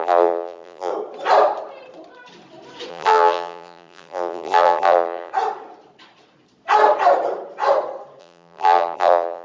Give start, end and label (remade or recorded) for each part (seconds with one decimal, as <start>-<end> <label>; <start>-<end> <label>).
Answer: 0.0-0.9 remade; 0.9-2.9 recorded; 2.9-5.3 remade; 5.3-8.2 recorded; 8.2-9.4 remade